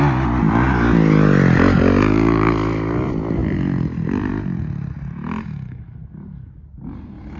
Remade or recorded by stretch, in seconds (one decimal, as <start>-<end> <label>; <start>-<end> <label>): 0.0-7.4 recorded